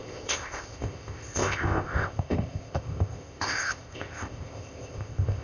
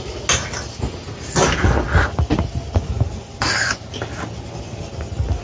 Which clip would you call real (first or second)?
second